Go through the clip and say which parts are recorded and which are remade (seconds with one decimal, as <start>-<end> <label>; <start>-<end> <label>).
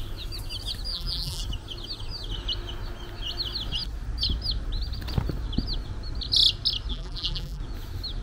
0.0-0.9 recorded; 0.9-1.4 remade; 1.4-6.9 recorded; 6.9-7.6 remade; 7.6-8.2 recorded